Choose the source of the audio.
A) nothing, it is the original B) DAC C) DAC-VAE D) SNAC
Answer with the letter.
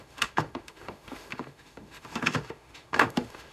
C